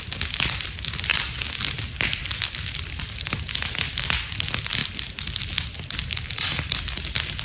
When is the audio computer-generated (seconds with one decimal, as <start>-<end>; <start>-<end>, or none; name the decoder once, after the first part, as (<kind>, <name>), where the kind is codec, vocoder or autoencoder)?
none